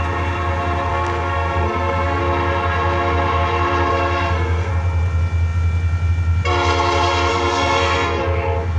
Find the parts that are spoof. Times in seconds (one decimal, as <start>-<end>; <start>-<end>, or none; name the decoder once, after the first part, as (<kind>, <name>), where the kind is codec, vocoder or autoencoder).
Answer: 0.9-2.2 (codec, SNAC); 3.9-4.7; 7.3-8.2